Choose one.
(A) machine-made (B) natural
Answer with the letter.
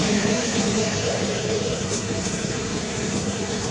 A